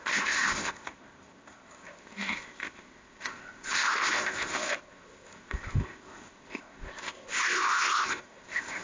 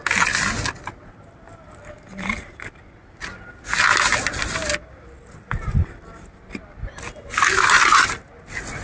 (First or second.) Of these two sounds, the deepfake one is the first